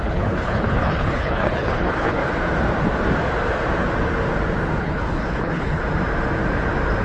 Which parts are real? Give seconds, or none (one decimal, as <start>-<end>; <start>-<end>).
2.2-4.8; 5.8-7.0